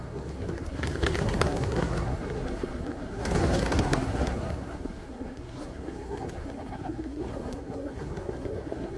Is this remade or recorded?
remade